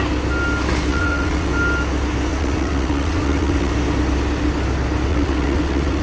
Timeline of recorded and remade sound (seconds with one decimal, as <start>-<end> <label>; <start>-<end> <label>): 0.0-0.9 recorded; 0.9-1.5 remade; 1.5-2.3 recorded; 2.3-3.7 remade; 3.7-5.1 recorded; 5.1-6.0 remade